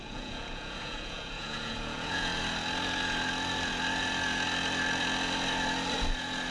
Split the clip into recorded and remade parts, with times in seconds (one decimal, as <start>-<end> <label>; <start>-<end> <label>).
0.0-2.3 remade; 2.3-6.5 recorded